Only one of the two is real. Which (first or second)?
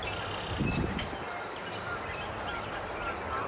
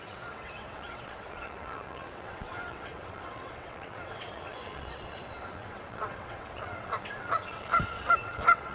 first